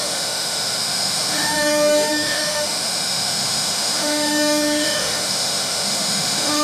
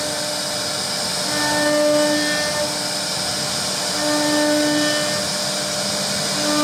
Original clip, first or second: second